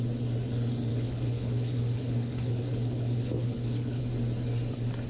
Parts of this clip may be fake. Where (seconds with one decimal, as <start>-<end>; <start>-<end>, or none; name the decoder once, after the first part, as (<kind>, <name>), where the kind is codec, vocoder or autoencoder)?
0.9-4.0 (codec, HILCodec)